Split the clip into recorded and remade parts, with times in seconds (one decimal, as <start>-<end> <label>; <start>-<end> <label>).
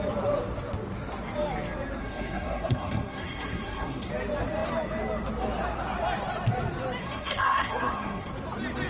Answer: 0.0-2.0 recorded; 2.0-4.1 remade; 4.1-7.0 recorded; 7.0-8.3 remade; 8.3-8.9 recorded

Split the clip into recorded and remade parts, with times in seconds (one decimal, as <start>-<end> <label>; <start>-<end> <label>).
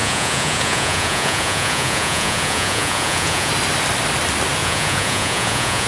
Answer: 0.0-3.5 remade; 3.5-4.6 recorded; 4.6-5.9 remade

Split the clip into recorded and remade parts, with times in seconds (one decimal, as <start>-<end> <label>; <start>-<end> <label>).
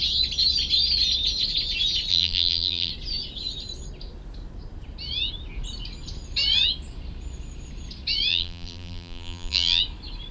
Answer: 0.0-2.1 recorded; 2.1-2.9 remade; 2.9-8.3 recorded; 8.3-9.8 remade; 9.8-10.3 recorded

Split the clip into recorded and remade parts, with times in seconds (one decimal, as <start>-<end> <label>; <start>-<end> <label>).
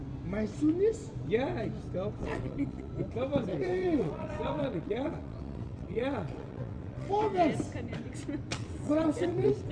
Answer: 0.0-2.2 recorded; 2.2-2.9 remade; 2.9-3.5 recorded; 3.5-7.1 remade; 7.1-8.5 recorded; 8.5-9.7 remade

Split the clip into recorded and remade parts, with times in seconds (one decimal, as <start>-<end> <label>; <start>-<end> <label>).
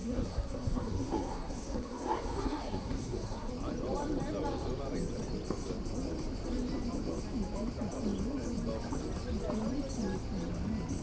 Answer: 0.0-3.5 remade; 3.5-11.0 recorded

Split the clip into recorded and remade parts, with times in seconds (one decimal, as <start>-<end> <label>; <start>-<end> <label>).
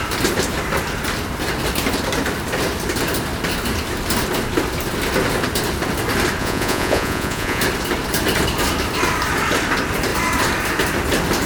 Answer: 0.0-6.4 recorded; 6.4-7.6 remade; 7.6-11.5 recorded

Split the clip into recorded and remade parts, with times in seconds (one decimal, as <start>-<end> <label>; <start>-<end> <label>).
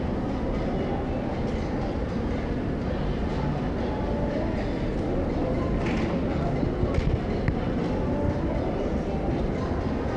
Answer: 0.0-10.2 recorded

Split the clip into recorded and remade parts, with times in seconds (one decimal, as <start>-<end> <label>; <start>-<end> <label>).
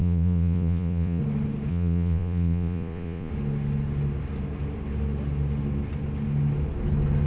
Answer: 0.0-1.2 remade; 1.2-1.7 recorded; 1.7-3.3 remade; 3.3-7.3 recorded